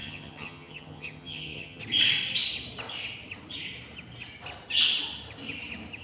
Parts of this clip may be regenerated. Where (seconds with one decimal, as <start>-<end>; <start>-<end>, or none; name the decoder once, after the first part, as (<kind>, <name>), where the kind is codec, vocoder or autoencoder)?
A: 0.0-1.8 (vocoder, HiFi-GAN)